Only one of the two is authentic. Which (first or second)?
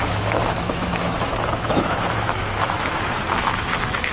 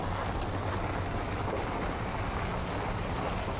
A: second